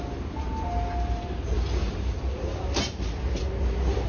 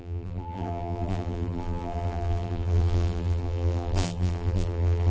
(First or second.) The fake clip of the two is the second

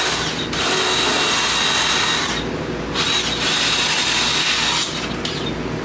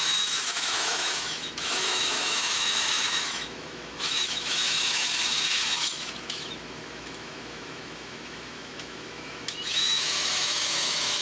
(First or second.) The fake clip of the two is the second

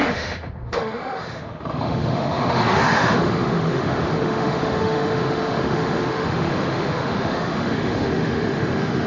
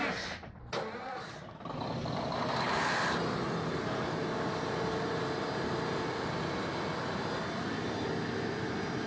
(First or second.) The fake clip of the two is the first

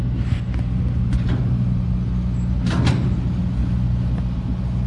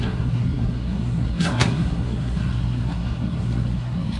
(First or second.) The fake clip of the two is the second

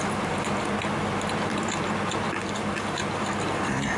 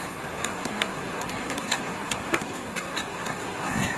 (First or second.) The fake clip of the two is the second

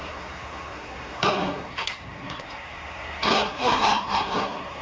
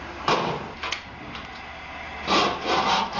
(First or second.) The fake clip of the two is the first